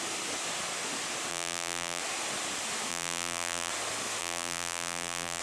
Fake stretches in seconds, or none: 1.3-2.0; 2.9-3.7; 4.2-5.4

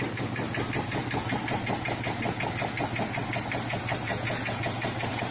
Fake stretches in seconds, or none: 4.1-4.6

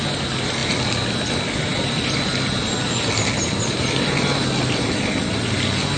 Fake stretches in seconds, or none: none

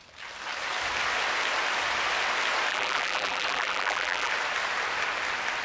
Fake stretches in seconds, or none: 2.7-4.3

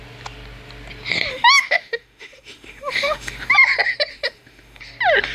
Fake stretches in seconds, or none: 1.3-3.5; 4.1-4.8